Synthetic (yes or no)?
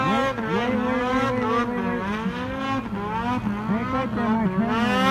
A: no